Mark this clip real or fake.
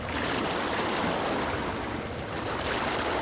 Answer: real